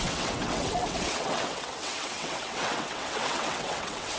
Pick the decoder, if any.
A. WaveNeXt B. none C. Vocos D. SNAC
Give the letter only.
A